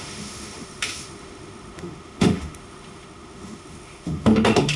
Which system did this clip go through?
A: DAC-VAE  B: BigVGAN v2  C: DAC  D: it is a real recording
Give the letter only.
A